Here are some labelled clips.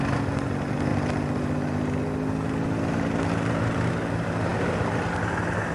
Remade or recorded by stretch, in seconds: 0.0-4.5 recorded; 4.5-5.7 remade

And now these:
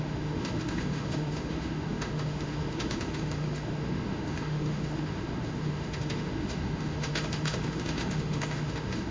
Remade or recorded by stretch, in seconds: 0.0-9.1 remade

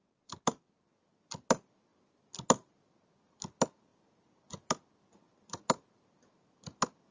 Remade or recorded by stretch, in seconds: 0.0-7.1 recorded

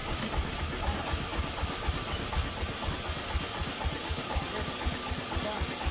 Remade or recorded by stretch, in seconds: 0.0-5.9 recorded

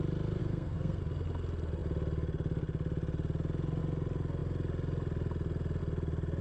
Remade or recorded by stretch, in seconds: 0.0-0.4 recorded; 0.4-1.0 remade; 1.0-6.4 recorded